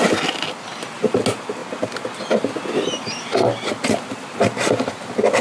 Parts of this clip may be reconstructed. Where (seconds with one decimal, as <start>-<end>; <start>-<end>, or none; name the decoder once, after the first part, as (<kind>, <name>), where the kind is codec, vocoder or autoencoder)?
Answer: none